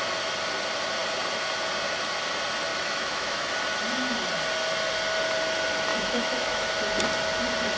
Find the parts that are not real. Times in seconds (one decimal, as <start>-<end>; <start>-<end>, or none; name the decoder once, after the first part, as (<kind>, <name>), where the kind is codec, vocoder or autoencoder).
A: 2.7-3.5 (autoencoder, DAC-VAE); 5.9-6.7